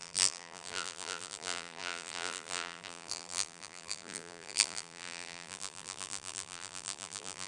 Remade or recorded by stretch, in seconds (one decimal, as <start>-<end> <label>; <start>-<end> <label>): 0.0-7.5 remade